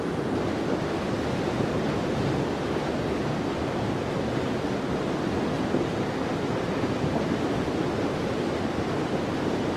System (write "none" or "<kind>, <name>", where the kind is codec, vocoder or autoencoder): none